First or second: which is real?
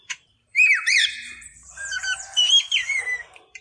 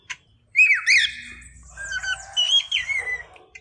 second